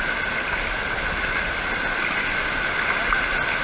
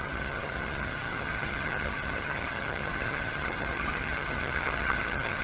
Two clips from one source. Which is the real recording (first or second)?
first